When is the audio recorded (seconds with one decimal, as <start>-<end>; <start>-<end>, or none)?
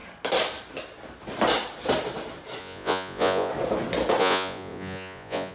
0.0-2.6; 3.5-4.2